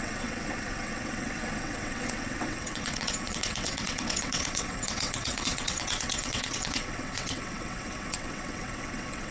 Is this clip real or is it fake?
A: fake